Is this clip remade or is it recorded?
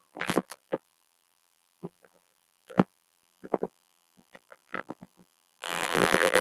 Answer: remade